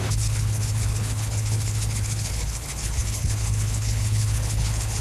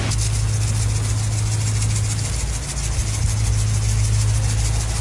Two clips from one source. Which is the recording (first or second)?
second